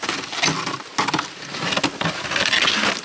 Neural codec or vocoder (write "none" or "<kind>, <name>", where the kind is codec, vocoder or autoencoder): none